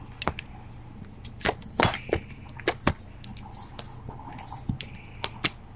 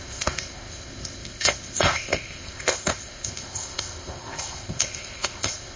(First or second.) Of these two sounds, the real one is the first